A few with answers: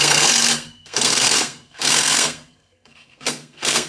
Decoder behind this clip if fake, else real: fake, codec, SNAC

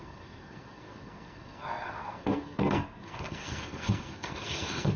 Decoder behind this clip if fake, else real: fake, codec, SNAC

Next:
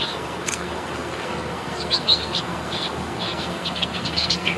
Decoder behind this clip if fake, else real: fake, codec, SNAC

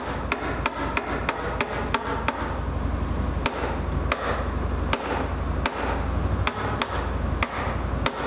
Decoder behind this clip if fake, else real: real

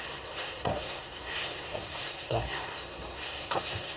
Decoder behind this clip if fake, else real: fake, codec, SNAC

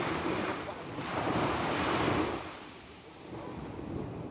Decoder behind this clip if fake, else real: real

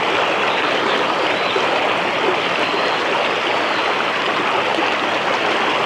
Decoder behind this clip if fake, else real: real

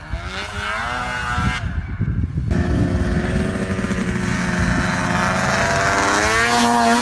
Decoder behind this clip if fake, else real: real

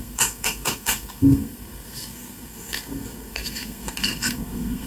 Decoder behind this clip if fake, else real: fake, codec, SNAC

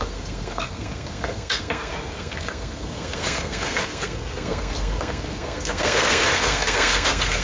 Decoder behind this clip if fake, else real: fake, codec, SNAC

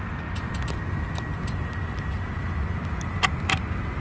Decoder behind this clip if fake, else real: real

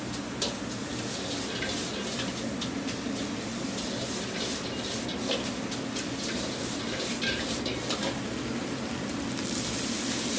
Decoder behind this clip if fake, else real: real